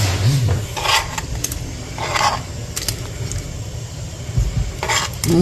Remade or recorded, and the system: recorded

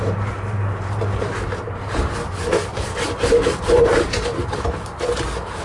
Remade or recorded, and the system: remade, vocoder, BigVGAN v2